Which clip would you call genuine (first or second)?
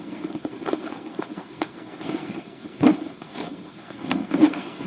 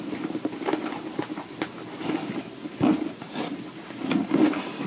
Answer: second